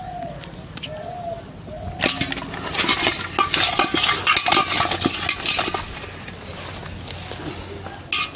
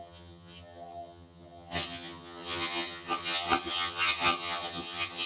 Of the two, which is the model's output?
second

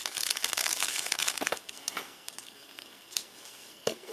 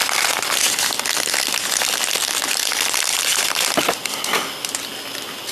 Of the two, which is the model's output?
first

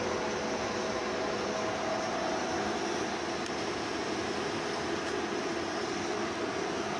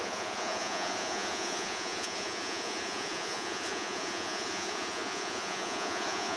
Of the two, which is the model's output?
second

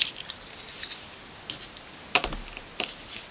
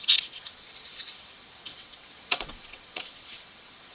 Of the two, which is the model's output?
second